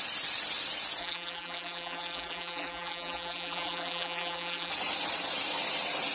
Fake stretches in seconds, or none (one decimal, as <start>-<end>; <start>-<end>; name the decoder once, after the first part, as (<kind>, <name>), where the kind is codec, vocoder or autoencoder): 1.0-4.7 (vocoder, BigVGAN v2)